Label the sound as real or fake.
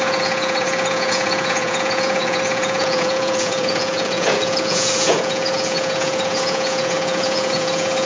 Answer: fake